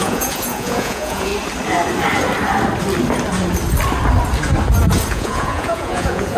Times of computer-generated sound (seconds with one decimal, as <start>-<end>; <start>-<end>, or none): 0.0-1.3; 5.1-6.4

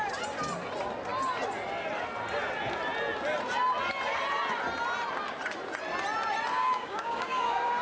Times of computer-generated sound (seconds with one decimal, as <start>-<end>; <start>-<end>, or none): 6.5-7.8